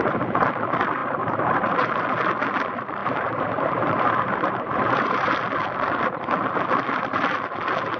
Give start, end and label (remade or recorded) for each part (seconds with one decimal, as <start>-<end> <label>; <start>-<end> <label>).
0.0-1.0 recorded; 1.0-2.0 remade; 2.0-3.0 recorded; 3.0-5.3 remade; 5.3-8.0 recorded